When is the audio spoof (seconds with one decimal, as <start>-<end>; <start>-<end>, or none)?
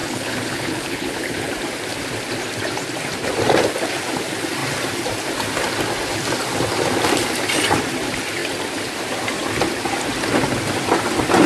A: 0.0-1.5